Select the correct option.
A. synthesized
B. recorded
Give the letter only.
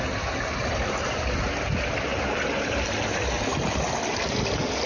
B